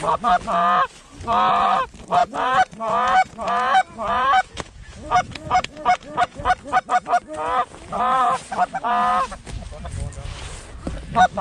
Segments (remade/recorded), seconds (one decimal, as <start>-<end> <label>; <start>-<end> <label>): 0.0-2.2 recorded; 2.2-6.4 remade; 6.4-11.4 recorded